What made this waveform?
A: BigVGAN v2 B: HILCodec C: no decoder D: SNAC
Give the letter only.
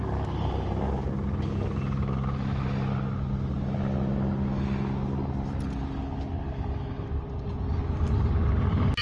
C